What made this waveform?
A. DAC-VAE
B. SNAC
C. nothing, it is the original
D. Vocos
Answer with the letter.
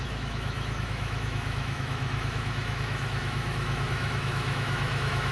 A